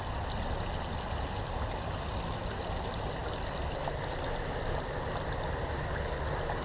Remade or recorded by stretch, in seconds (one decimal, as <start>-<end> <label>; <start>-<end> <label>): 0.0-6.6 recorded